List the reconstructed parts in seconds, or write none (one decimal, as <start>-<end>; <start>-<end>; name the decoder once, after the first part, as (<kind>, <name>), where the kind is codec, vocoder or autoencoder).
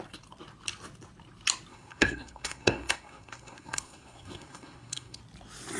1.7-5.2 (codec, SNAC)